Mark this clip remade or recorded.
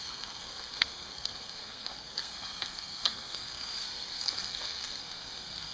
remade